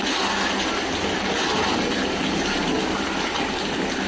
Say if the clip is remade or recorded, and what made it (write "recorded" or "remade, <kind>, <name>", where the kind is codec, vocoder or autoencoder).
recorded